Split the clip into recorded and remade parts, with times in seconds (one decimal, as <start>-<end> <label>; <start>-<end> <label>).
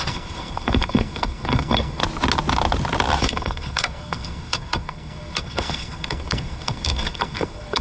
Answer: 0.0-2.0 remade; 2.0-3.2 recorded; 3.2-7.8 remade